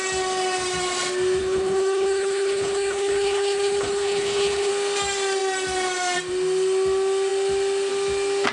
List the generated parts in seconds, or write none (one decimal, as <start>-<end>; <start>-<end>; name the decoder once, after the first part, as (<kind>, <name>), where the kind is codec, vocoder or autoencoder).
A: 1.4-4.7 (codec, HILCodec)